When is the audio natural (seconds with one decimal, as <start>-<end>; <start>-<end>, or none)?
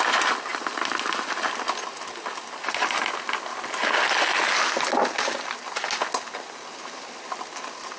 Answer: 0.0-8.0